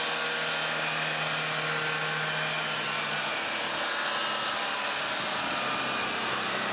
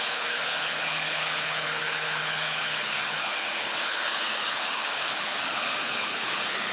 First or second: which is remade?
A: second